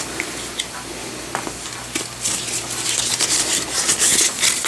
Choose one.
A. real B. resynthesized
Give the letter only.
A